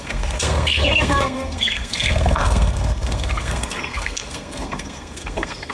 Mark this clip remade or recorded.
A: remade